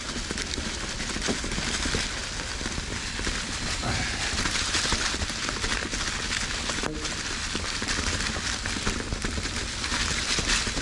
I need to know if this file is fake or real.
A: real